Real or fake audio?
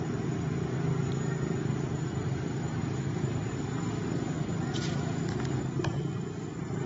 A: fake